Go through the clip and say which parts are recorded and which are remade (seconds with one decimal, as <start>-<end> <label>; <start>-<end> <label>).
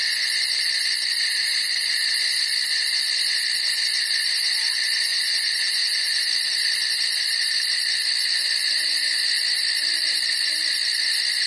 0.0-5.1 recorded; 5.1-6.2 remade; 6.2-11.5 recorded